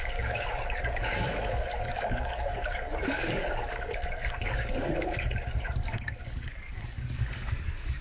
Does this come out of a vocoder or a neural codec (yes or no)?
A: yes